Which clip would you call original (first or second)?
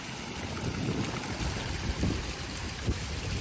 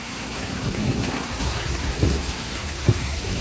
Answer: first